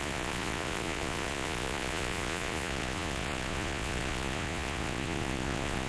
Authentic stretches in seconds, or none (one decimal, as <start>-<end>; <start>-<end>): none